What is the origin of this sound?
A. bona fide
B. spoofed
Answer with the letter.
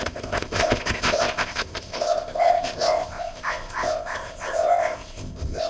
B